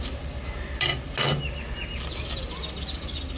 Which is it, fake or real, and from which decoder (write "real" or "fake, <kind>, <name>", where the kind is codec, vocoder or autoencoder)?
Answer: real